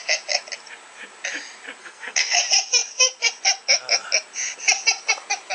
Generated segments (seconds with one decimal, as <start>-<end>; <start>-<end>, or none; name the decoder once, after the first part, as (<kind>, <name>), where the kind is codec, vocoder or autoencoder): 1.8-2.4 (codec, SNAC)